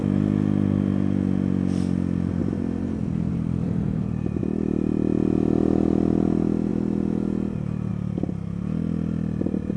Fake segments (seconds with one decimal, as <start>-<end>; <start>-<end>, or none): 2.4-4.4